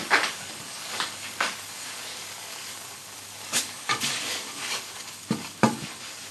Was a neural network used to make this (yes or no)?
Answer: yes